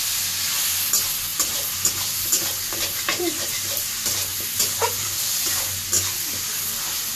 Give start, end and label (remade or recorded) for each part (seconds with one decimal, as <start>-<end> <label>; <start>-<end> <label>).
0.0-1.3 recorded; 1.3-5.6 remade; 5.6-7.1 recorded